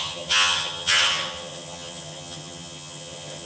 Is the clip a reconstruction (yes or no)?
yes